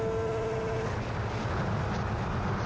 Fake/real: real